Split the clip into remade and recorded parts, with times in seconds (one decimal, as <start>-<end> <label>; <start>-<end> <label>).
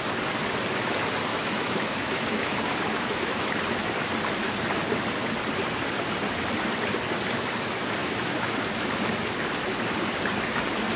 0.0-1.3 recorded; 1.3-3.6 remade; 3.6-8.0 recorded; 8.0-8.9 remade; 8.9-11.0 recorded